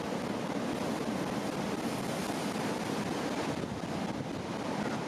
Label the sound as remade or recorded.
recorded